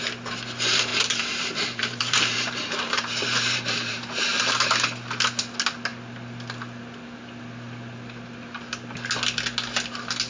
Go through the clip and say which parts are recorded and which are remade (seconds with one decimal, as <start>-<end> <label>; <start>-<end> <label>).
0.0-0.9 recorded; 0.9-4.4 remade; 4.4-10.3 recorded